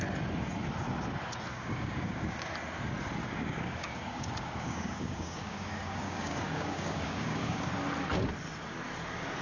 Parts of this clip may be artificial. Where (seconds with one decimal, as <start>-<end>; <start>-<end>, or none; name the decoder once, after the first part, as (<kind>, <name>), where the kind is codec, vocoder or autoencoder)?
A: 1.5-2.5 (codec, DAC); 3.2-7.7